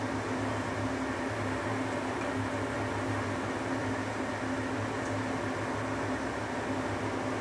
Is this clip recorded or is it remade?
recorded